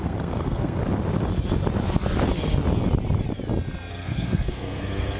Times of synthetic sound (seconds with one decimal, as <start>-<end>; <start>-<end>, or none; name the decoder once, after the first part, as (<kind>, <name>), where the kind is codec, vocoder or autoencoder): 0.0-0.8 (codec, SNAC); 3.9-5.2